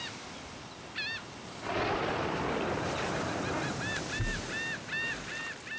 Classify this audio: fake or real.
real